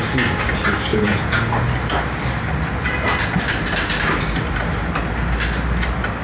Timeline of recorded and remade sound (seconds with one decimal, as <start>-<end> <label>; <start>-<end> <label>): 0.0-0.9 recorded; 0.9-1.5 remade; 1.5-6.2 recorded